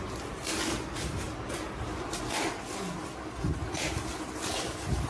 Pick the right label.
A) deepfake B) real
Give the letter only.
B